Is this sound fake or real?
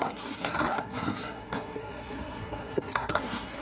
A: fake